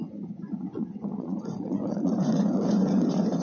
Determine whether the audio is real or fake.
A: fake